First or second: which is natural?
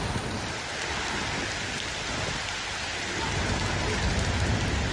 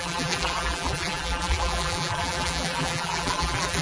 first